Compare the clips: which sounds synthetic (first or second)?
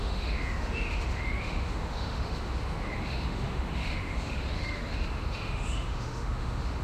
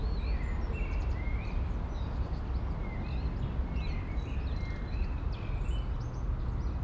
first